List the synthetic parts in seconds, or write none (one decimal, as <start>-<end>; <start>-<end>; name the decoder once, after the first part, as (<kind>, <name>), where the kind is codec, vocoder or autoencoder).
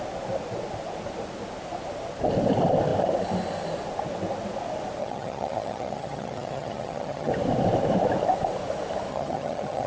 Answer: 5.0-7.3 (vocoder, HiFi-GAN); 9.1-9.9